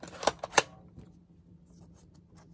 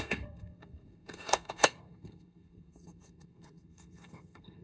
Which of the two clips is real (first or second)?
first